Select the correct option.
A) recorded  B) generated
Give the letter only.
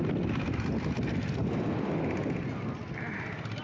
A